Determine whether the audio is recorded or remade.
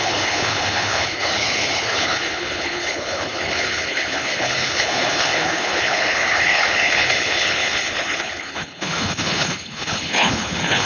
remade